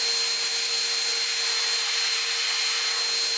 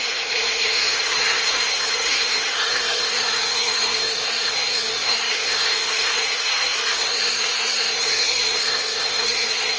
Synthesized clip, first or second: second